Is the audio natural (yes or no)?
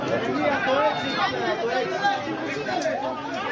yes